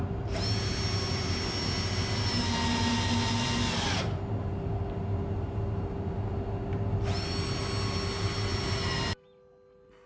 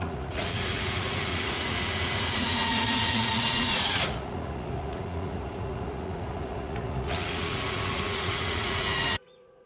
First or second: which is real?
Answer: first